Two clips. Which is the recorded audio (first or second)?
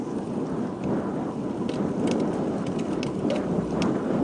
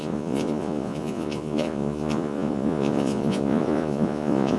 first